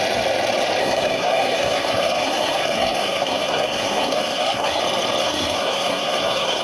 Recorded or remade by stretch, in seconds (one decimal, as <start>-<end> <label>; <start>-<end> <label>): 0.0-0.8 recorded; 0.8-4.8 remade; 4.8-5.2 recorded; 5.2-6.6 remade